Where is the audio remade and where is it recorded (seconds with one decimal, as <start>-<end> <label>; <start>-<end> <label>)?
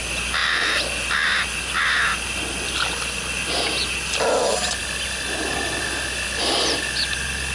0.0-7.5 recorded